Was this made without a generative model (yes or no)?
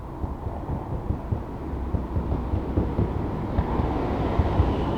yes